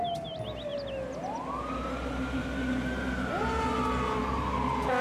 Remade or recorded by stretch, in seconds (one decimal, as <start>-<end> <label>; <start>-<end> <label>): 0.0-5.0 recorded